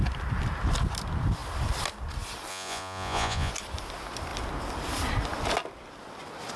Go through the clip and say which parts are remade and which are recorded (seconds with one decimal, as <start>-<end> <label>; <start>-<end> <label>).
0.0-2.5 recorded; 2.5-3.5 remade; 3.5-6.6 recorded